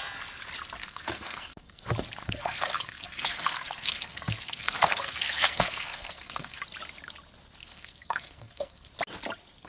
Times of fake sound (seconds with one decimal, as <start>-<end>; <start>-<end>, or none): 0.8-1.8; 2.2-6.6; 7.6-8.9